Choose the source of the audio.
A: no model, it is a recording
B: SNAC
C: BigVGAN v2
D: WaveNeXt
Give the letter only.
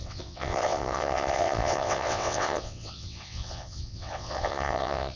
D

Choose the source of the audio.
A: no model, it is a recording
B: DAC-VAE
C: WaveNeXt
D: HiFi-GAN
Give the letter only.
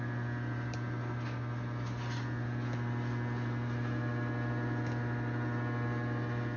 A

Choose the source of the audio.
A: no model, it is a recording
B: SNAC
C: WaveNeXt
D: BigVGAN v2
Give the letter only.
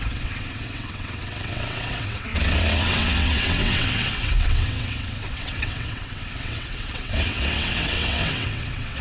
C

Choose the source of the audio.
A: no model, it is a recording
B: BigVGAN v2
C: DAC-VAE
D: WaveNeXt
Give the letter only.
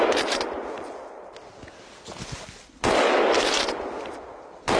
A